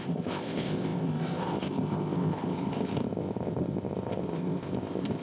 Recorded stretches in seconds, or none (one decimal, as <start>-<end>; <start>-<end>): none